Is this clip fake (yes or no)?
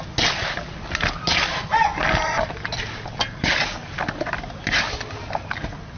no